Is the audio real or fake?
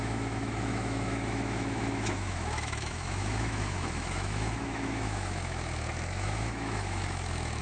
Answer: fake